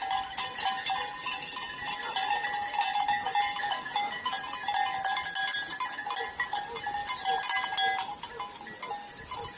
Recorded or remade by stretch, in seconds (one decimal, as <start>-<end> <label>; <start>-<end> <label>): 0.0-3.6 recorded; 3.6-4.3 remade; 4.3-9.6 recorded